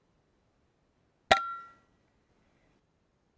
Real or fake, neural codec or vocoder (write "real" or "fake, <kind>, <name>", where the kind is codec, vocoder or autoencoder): real